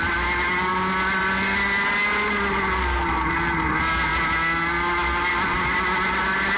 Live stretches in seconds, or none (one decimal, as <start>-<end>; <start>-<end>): 0.0-6.6